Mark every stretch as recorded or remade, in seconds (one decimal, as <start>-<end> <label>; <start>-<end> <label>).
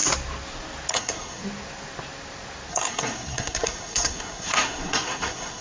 0.0-0.9 recorded; 0.9-1.4 remade; 1.4-2.7 recorded; 2.7-5.6 remade